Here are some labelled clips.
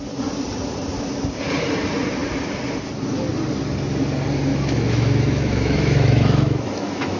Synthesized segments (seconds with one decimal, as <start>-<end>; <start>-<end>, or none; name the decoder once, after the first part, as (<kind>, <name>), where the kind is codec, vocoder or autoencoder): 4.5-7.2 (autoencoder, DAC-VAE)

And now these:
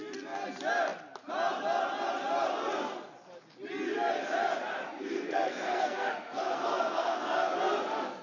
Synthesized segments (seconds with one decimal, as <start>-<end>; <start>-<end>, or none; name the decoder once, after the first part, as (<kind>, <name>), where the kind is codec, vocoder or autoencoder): 5.0-7.5 (codec, SNAC)

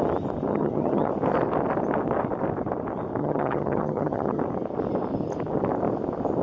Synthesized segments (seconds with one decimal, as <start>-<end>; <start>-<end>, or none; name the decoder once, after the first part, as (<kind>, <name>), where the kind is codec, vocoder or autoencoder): 0.5-1.1 (vocoder, HiFi-GAN); 3.2-4.4

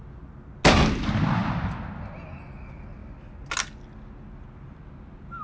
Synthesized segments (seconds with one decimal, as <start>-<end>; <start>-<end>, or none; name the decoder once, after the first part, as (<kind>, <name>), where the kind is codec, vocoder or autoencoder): none

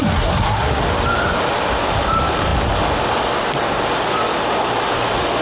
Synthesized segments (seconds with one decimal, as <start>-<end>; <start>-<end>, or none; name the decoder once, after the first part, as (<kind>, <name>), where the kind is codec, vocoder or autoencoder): 0.0-0.8 (codec, SNAC)

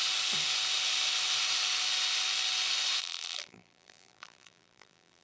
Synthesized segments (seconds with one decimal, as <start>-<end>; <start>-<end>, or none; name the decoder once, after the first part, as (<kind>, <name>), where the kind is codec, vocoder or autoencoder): 3.0-5.2 (vocoder, BigVGAN v2)